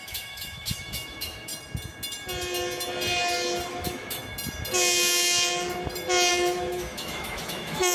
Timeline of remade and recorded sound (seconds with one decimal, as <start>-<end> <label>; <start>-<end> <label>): 0.0-1.5 remade; 1.5-3.7 recorded; 3.7-4.2 remade; 4.2-6.3 recorded; 6.3-7.9 remade